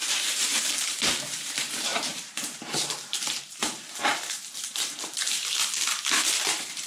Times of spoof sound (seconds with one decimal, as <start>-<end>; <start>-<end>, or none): 0.0-6.9